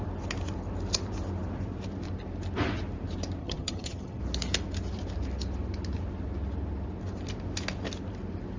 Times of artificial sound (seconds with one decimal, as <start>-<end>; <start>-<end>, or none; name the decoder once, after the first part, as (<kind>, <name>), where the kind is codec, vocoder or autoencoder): 3.4-4.2 (vocoder, HiFi-GAN)